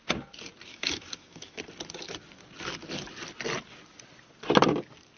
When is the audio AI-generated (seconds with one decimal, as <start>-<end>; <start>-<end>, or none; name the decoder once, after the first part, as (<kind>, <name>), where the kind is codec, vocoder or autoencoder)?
0.7-1.6 (autoencoder, DAC-VAE)